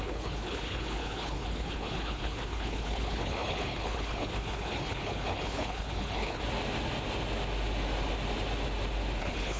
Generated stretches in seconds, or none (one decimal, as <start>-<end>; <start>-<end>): 0.0-6.4; 9.2-9.6